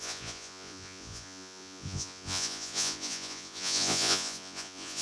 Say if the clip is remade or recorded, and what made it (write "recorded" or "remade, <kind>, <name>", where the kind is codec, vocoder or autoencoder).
remade, vocoder, Vocos